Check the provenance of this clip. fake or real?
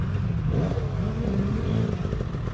real